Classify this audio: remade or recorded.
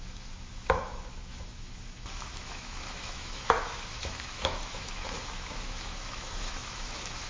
remade